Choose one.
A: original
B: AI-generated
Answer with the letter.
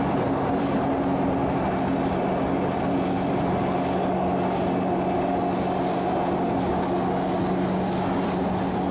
A